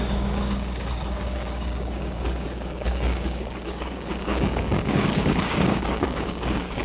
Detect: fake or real fake